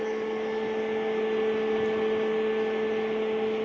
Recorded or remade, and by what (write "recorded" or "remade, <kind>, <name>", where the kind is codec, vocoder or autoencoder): recorded